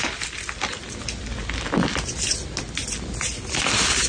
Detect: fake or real real